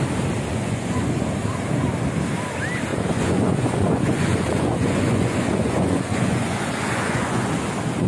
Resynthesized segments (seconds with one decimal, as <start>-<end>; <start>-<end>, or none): 0.5-1.2; 2.9-7.5